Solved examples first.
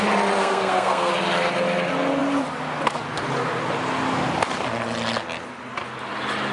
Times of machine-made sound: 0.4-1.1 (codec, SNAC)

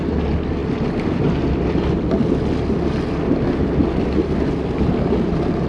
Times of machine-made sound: none

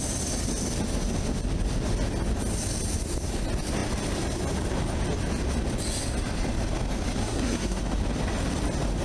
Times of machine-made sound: 7.2-7.8 (codec, SNAC)

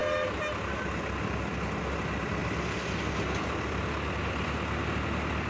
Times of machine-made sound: none

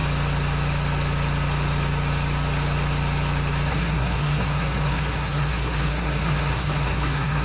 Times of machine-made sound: 3.7-7.4 (codec, SNAC)

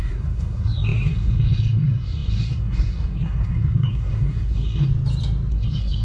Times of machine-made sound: 0.0-4.9 (codec, SNAC); 5.5-6.0

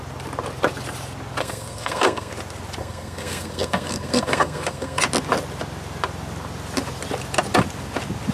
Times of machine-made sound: 1.4-2.3 (codec, SNAC); 2.8-5.0